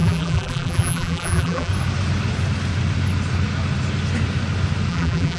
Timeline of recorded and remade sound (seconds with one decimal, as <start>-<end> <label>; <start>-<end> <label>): 0.0-1.7 remade; 1.7-4.9 recorded; 4.9-5.4 remade